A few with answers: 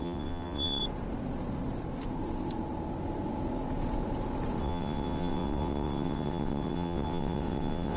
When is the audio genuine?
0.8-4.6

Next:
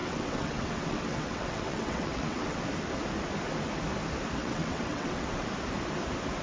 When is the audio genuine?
2.6-4.4; 5.5-6.4

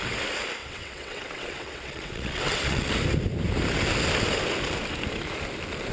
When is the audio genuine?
0.0-0.6; 2.9-5.9

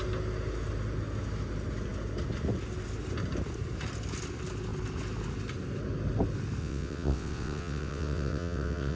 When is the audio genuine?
0.0-6.6

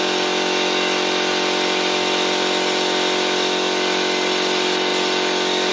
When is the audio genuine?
0.0-5.7